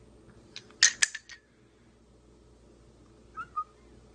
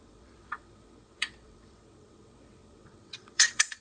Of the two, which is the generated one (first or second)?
second